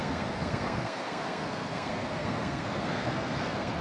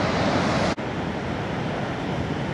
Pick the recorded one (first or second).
second